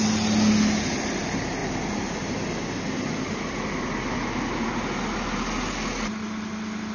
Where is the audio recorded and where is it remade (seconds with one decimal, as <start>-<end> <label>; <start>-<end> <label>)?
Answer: 0.0-6.9 recorded